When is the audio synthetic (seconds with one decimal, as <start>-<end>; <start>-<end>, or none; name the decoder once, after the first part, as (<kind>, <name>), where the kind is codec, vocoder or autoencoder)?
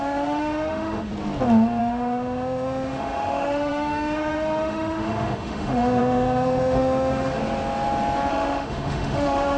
0.0-1.1 (autoencoder, DAC-VAE); 1.8-7.4; 8.3-9.6